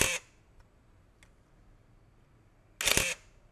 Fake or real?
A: real